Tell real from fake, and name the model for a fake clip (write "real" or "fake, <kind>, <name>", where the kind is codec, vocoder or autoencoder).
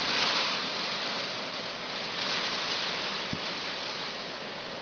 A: fake, vocoder, BigVGAN v2